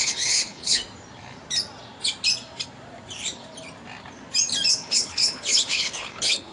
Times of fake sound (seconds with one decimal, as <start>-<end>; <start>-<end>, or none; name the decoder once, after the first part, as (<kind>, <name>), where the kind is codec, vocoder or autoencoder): 0.0-0.8 (codec, HILCodec); 4.7-6.5